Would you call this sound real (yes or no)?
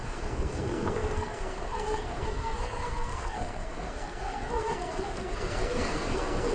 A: no